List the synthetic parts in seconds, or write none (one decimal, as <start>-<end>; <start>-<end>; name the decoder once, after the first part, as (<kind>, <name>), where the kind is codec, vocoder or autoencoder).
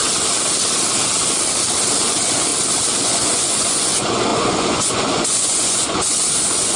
2.0-2.5 (vocoder, Vocos); 3.0-6.8